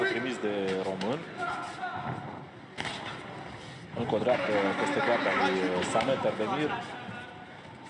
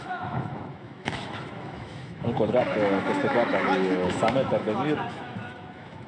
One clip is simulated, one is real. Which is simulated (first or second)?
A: second